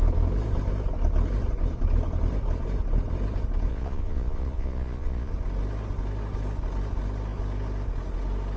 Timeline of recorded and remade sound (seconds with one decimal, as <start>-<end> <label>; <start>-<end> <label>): 0.0-3.7 recorded; 3.7-5.3 remade; 5.3-8.6 recorded